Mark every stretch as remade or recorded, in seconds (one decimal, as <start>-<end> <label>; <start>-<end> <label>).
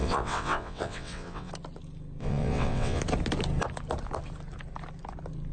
0.0-1.5 remade; 1.5-2.2 recorded; 2.2-3.0 remade; 3.0-5.5 recorded